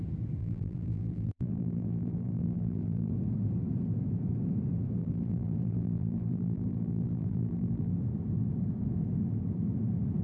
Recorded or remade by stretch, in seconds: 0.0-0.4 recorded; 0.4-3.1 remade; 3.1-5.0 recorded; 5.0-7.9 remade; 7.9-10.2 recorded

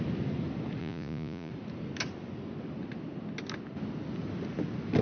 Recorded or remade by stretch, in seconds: 0.0-0.8 recorded; 0.8-1.5 remade; 1.5-5.0 recorded

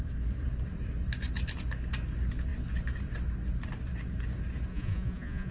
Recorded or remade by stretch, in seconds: 0.0-4.7 recorded; 4.7-5.5 remade

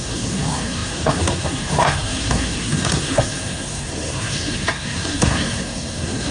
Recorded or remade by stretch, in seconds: 0.0-6.3 remade

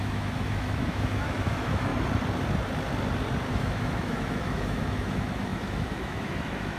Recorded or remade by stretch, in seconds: 0.0-1.9 remade; 1.9-3.5 recorded; 3.5-6.8 remade

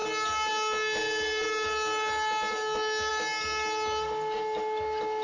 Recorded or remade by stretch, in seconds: 0.0-5.2 recorded

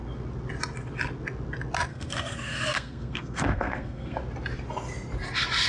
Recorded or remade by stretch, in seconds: 0.0-1.9 recorded; 1.9-4.2 remade; 4.2-5.7 recorded

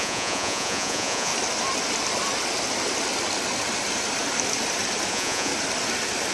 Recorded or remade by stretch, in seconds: 0.0-1.3 remade; 1.3-5.1 recorded; 5.1-5.5 remade; 5.5-6.3 recorded